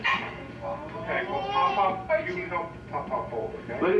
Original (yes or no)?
yes